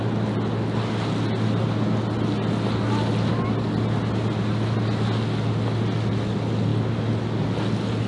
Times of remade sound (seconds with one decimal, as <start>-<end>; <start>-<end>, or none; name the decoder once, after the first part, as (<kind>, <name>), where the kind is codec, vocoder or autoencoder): none